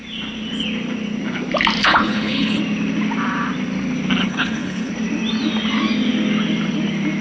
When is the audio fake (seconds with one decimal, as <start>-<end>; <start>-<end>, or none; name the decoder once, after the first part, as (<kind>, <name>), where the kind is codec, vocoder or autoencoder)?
1.8-2.6 (codec, HILCodec); 4.2-4.9